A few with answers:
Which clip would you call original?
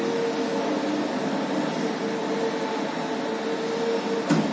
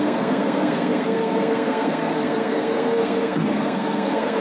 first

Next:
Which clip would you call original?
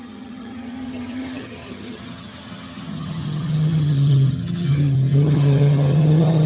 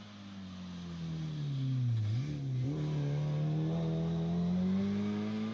second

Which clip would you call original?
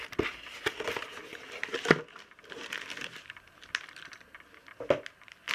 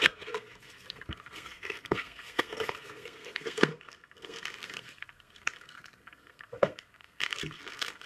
first